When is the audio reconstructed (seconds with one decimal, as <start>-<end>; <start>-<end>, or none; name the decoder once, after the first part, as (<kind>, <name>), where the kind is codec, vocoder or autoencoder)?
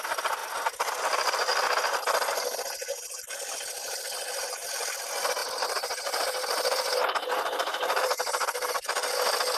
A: 5.4-8.7 (vocoder, BigVGAN v2)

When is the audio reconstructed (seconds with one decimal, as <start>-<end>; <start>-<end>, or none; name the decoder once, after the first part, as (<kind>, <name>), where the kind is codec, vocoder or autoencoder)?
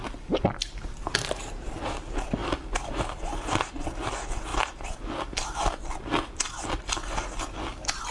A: 0.0-1.4 (vocoder, BigVGAN v2); 2.4-3.2; 4.5-6.8